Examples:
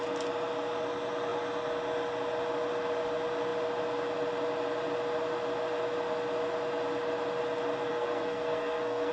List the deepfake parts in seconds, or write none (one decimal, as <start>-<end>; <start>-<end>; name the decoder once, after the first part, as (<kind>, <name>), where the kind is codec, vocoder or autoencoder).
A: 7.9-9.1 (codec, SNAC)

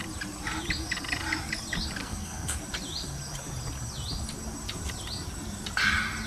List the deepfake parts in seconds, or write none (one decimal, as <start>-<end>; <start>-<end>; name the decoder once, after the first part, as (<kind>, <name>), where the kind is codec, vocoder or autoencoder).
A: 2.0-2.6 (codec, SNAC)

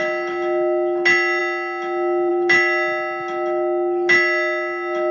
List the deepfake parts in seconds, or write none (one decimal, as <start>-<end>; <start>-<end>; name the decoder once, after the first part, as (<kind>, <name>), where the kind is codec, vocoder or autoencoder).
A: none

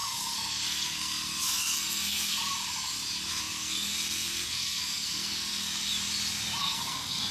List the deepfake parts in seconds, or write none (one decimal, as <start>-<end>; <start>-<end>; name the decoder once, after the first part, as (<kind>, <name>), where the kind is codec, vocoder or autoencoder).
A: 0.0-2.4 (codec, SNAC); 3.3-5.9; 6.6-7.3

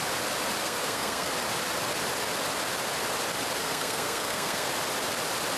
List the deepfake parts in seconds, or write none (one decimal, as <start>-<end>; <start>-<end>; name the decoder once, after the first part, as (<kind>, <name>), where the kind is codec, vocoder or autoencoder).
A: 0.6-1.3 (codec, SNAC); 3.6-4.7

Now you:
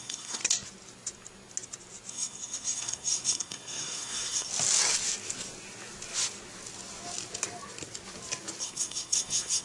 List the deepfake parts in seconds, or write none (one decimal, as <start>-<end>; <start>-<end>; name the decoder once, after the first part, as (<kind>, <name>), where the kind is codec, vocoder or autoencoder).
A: 0.0-0.4 (codec, SNAC); 2.1-4.5; 8.6-9.6